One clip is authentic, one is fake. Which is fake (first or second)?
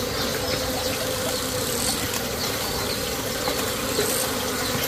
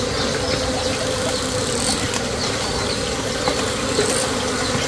second